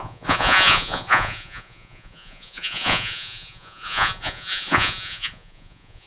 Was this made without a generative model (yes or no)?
no